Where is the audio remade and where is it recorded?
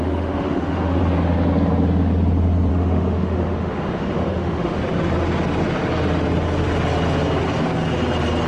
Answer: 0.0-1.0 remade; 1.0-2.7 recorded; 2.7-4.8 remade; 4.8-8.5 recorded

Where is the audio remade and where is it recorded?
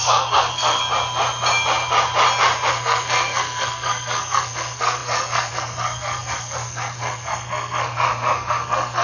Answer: 0.0-0.8 remade; 0.8-2.7 recorded; 2.7-9.0 remade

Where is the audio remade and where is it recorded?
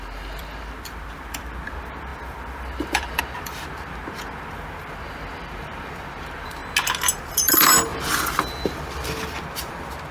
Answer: 0.0-6.6 remade; 6.6-7.3 recorded; 7.3-10.1 remade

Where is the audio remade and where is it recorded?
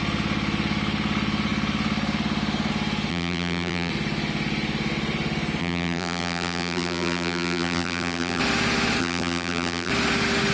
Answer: 0.0-3.1 recorded; 3.1-3.9 remade; 3.9-5.6 recorded; 5.6-8.4 remade; 8.4-9.0 recorded; 9.0-9.9 remade; 9.9-10.5 recorded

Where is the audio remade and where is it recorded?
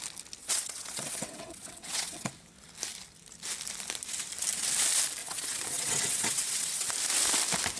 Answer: 0.0-0.4 recorded; 0.4-2.3 remade; 2.3-5.2 recorded; 5.2-6.9 remade; 6.9-7.8 recorded